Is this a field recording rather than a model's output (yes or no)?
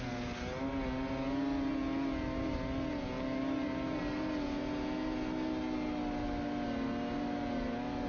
yes